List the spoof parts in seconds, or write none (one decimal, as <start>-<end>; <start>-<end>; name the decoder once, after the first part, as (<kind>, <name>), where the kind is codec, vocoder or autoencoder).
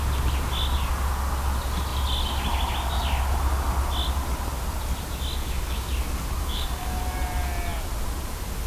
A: 5.4-5.9 (codec, DAC); 6.4-7.0